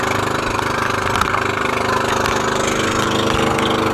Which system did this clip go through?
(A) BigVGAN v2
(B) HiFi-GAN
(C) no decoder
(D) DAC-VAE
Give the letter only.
C